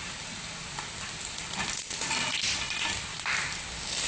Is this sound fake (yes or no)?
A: no